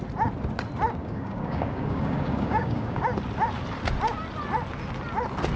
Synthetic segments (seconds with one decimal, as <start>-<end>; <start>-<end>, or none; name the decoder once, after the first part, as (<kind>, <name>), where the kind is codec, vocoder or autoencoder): 1.0-3.0 (codec, DAC)